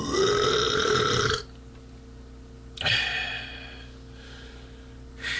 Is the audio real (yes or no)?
yes